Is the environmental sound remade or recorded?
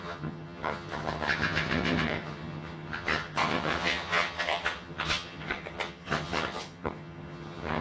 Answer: remade